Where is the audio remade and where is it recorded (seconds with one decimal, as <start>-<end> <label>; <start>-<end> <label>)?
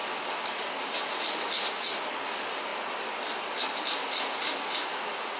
0.0-5.4 recorded